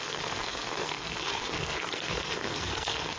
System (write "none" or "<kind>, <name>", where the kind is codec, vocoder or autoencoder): codec, SNAC